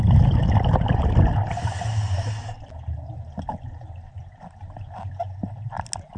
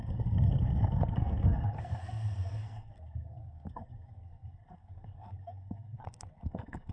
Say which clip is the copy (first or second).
second